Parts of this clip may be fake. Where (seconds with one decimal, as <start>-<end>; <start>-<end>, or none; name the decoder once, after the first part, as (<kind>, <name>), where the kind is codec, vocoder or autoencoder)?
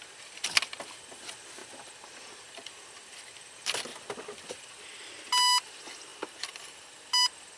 1.6-3.3 (vocoder, BigVGAN v2); 3.9-4.5; 6.1-6.9